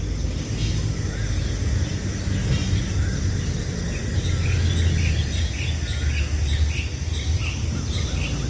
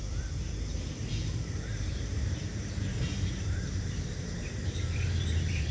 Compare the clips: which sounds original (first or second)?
first